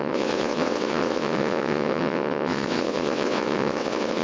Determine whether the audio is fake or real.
fake